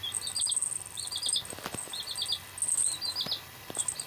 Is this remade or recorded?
recorded